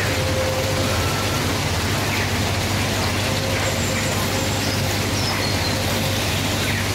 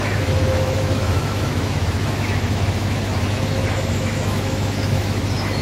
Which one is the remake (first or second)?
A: second